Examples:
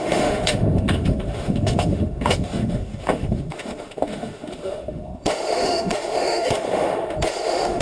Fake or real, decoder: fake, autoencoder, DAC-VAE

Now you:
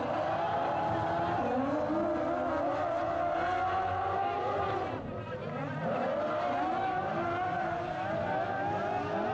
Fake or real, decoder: real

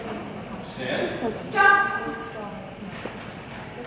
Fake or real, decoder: real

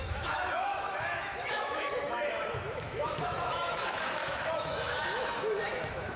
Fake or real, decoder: fake, autoencoder, DAC-VAE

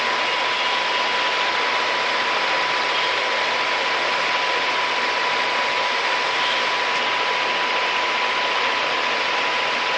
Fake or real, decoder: real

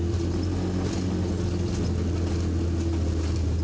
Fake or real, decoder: real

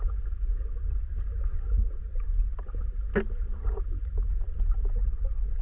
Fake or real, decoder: real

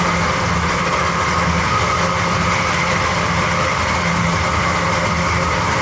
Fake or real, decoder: real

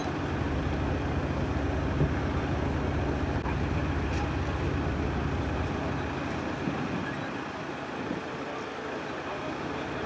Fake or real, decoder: real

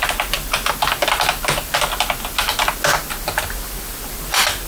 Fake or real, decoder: real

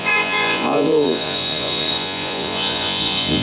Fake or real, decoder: fake, vocoder, Vocos